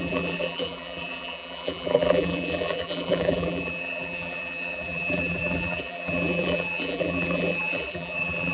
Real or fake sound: fake